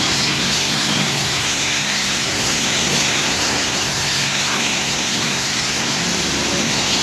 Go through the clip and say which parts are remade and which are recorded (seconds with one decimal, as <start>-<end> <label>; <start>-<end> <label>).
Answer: 0.0-6.0 remade; 6.0-6.6 recorded; 6.6-7.0 remade